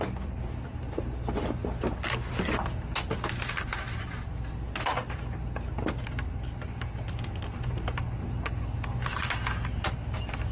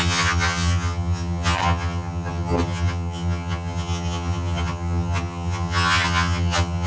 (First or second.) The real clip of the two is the first